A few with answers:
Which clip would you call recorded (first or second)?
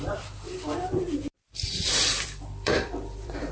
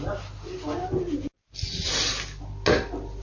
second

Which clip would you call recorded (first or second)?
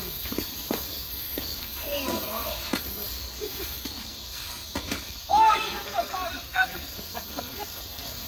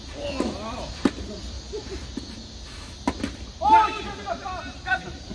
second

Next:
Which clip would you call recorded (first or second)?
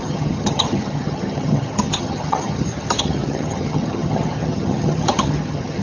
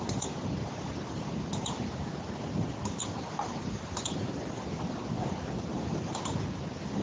second